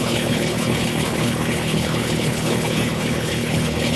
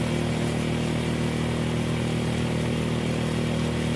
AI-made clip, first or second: first